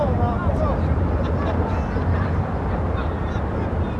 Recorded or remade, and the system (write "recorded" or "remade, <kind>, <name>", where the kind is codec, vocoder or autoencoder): recorded